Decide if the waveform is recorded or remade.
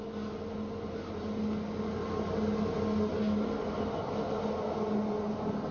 recorded